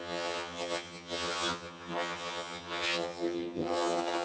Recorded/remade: remade